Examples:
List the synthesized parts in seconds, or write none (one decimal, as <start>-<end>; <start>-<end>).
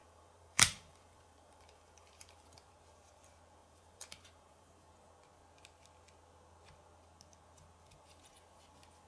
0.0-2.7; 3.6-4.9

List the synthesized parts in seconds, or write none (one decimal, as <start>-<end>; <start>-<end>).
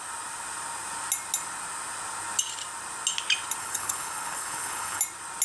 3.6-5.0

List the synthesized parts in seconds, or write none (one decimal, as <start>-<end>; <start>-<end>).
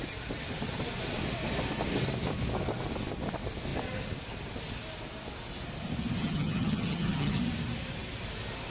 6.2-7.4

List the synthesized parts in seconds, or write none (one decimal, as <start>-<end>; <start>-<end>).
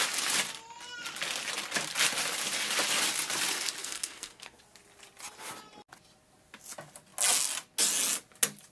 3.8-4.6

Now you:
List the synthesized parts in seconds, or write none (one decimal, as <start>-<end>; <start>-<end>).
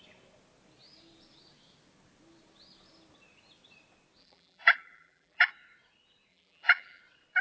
4.2-5.5; 6.3-7.0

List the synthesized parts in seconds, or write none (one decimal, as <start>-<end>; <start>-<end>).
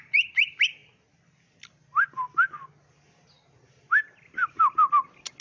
none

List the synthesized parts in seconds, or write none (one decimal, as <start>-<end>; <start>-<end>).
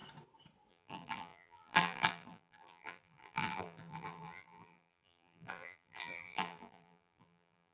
0.7-7.7